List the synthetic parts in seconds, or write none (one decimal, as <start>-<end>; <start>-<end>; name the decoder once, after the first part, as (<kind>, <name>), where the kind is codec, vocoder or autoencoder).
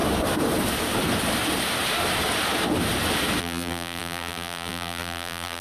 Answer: 3.4-5.6 (vocoder, BigVGAN v2)